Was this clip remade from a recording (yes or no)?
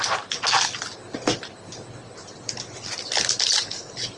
no